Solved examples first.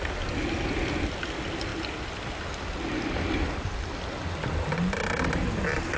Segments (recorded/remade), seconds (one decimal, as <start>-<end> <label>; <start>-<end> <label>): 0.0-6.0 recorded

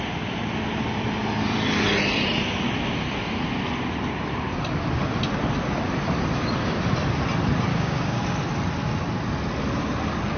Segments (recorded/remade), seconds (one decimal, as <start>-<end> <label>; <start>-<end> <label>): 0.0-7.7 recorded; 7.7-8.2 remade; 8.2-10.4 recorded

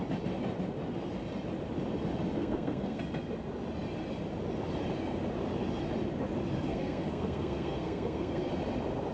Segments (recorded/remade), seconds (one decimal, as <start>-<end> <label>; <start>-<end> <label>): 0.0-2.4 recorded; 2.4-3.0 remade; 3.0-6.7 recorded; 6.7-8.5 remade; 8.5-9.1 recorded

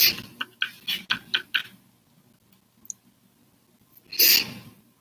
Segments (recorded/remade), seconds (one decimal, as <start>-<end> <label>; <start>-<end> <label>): 0.0-5.0 recorded

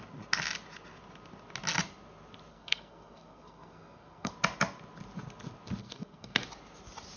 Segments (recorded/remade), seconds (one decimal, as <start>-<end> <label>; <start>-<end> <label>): 0.0-2.5 recorded; 2.5-4.3 remade; 4.3-5.8 recorded; 5.8-6.4 remade; 6.4-7.2 recorded